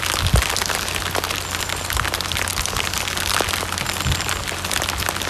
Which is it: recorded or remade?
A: recorded